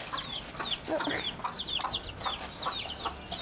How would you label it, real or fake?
real